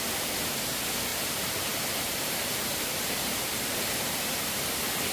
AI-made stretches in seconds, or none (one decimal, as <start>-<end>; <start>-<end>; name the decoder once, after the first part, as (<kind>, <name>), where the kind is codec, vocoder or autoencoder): 1.1-3.6 (vocoder, BigVGAN v2)